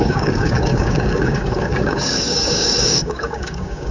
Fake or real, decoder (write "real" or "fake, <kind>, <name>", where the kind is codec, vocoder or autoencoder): fake, codec, DAC